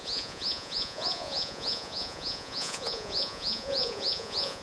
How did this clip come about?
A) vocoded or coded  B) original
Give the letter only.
A